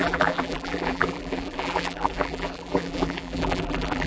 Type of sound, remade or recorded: remade